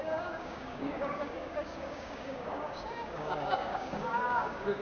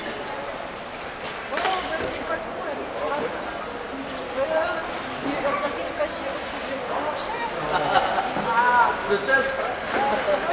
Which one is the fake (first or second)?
first